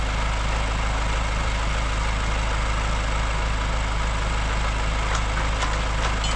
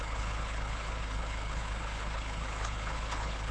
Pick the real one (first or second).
first